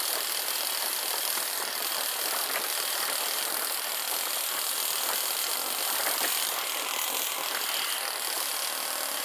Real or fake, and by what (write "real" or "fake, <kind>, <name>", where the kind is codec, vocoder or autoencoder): real